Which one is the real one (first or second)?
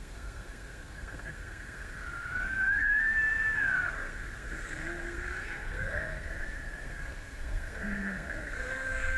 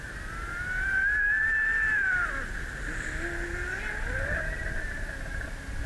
second